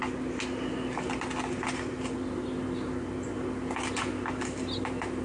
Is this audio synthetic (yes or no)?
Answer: no